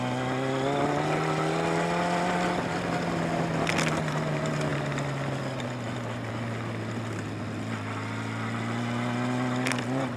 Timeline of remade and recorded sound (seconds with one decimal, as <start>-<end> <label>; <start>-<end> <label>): 0.0-10.2 recorded